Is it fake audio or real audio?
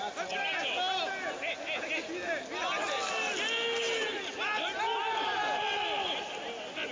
real